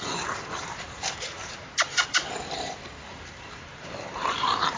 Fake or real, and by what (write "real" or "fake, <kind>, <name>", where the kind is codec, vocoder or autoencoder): fake, vocoder, BigVGAN v2